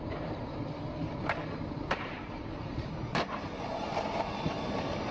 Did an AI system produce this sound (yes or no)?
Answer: yes